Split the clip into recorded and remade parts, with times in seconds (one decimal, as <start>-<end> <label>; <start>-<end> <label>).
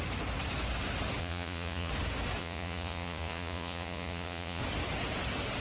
0.0-1.2 recorded; 1.2-1.9 remade; 1.9-2.4 recorded; 2.4-4.6 remade; 4.6-5.6 recorded